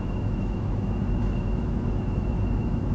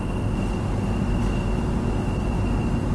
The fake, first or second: first